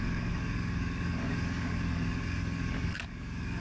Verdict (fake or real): fake